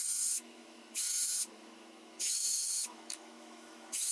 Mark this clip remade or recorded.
remade